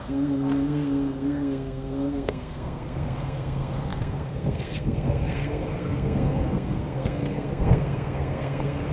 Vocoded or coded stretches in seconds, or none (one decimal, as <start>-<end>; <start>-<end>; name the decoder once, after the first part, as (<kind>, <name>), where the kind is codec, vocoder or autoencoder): 0.0-8.9 (codec, SNAC)